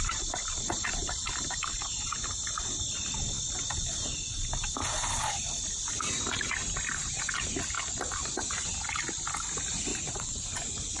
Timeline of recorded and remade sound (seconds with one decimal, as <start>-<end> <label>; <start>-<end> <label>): 0.0-1.0 recorded; 1.0-2.3 remade; 2.3-9.9 recorded; 9.9-11.0 remade